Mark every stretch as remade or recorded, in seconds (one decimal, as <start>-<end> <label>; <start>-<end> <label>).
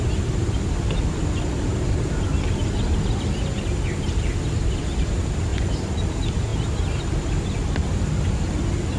0.0-5.5 recorded; 5.5-6.1 remade; 6.1-9.0 recorded